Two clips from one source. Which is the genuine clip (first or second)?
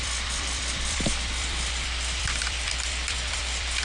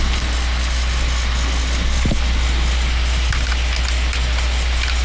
second